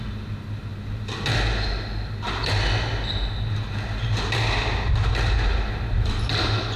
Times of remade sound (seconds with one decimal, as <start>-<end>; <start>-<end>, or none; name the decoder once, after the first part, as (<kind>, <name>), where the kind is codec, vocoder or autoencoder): none

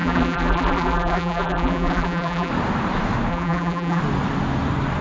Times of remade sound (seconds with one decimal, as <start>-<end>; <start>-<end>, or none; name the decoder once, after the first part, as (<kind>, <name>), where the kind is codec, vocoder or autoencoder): 0.0-2.5 (vocoder, BigVGAN v2); 3.3-4.0